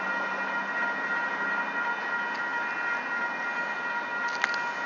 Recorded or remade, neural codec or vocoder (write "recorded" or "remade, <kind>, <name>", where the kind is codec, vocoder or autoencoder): recorded